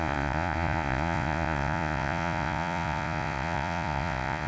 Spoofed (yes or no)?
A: yes